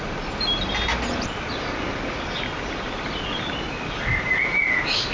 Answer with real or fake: real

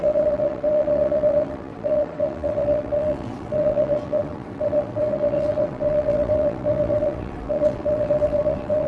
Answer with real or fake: fake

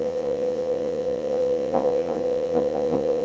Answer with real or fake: fake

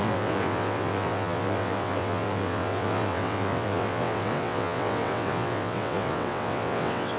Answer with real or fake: fake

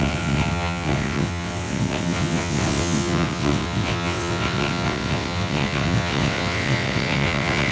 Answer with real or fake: fake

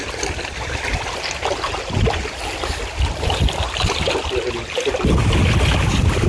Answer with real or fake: real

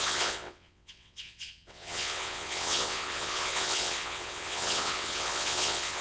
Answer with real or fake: fake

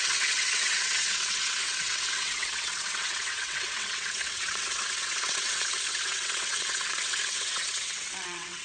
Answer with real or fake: fake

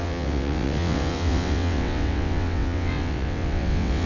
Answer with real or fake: fake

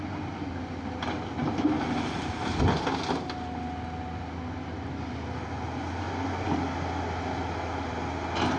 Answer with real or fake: real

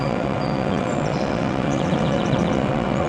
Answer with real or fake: fake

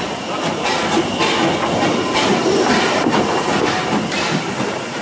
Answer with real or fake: real